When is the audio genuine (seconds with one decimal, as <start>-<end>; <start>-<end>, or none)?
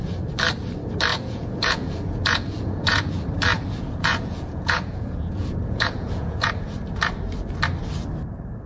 0.0-1.1; 3.1-3.5; 6.5-8.7